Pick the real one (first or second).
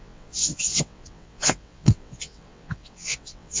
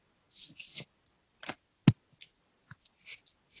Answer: second